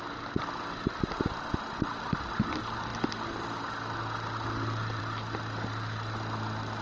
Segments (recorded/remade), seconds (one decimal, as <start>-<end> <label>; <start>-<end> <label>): 0.0-6.8 recorded